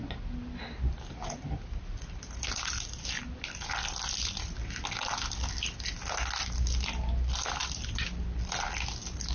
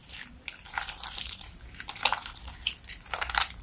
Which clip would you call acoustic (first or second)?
first